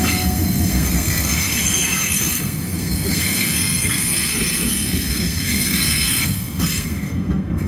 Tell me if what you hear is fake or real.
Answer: fake